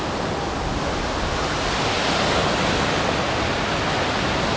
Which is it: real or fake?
real